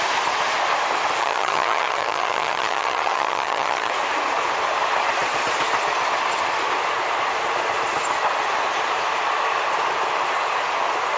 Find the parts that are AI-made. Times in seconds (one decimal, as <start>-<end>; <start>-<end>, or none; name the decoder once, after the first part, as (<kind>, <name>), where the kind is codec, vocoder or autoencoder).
1.2-3.9 (vocoder, HiFi-GAN)